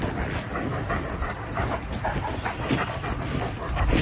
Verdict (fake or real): real